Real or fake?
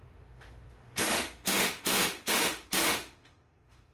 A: fake